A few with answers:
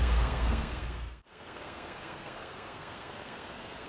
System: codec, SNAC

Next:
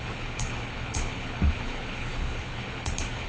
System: codec, HILCodec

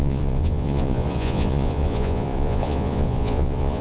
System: vocoder, Vocos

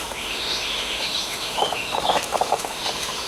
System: autoencoder, DAC-VAE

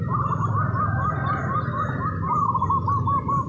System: none